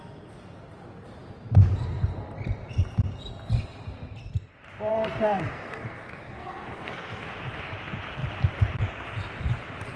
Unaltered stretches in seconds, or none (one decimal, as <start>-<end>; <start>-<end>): 0.0-4.9; 7.3-10.0